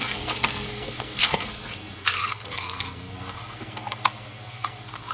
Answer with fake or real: fake